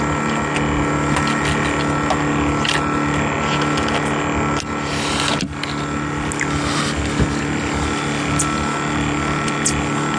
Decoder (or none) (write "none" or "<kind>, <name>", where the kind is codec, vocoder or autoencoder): none